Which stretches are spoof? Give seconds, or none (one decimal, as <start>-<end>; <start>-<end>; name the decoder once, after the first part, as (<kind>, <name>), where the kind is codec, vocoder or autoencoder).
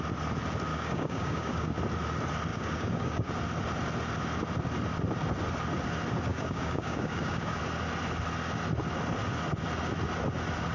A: 0.7-1.8 (codec, DAC); 2.5-3.3; 6.3-7.6